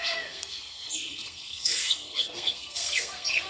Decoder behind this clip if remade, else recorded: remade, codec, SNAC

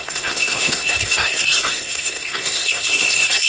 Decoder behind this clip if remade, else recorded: remade, codec, SNAC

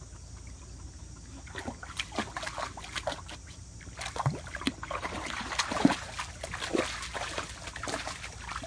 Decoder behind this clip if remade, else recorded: recorded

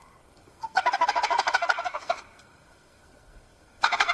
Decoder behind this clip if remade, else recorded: remade, codec, SNAC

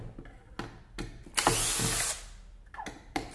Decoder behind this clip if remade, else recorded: recorded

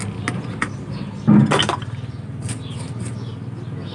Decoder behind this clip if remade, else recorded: recorded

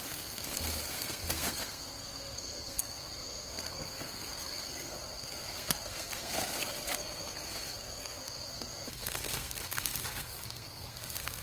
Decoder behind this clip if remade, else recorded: remade, codec, SNAC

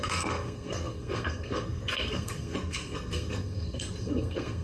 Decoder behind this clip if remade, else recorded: remade, codec, SNAC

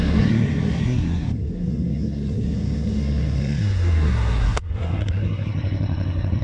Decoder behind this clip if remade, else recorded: remade, codec, SNAC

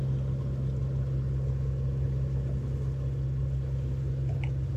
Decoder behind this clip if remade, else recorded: recorded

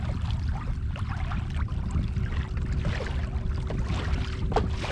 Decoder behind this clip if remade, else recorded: recorded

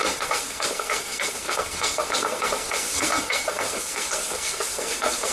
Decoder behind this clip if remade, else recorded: remade, codec, SNAC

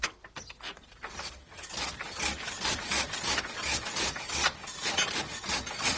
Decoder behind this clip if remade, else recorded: recorded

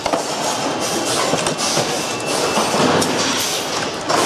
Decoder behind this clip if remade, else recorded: recorded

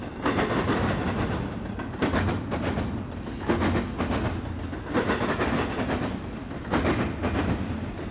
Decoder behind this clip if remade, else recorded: recorded